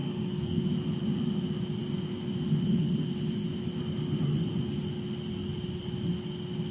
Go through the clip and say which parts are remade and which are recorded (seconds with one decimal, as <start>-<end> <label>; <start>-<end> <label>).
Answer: 0.0-0.6 remade; 0.6-6.7 recorded